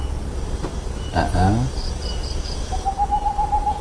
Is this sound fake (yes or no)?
no